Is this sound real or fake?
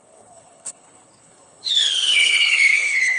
fake